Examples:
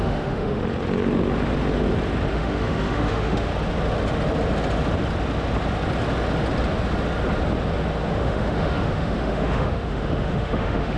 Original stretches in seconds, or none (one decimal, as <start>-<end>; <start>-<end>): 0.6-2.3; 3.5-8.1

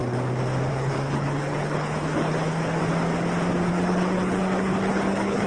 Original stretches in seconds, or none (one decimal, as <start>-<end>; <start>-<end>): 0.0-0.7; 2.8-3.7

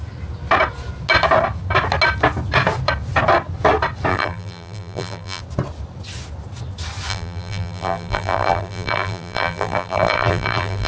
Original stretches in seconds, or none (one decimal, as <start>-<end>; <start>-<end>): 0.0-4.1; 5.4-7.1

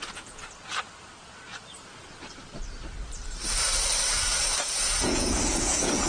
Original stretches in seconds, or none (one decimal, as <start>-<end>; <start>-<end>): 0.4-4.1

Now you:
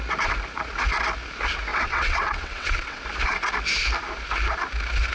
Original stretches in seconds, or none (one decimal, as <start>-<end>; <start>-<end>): 0.0-1.7; 3.0-5.1

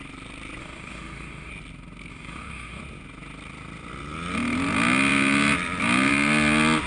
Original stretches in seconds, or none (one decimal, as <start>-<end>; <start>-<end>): 0.0-0.6; 1.5-2.1; 2.8-6.9